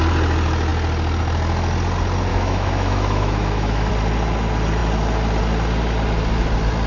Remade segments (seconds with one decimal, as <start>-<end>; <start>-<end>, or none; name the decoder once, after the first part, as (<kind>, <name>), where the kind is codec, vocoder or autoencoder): 2.3-3.9 (autoencoder, DAC-VAE)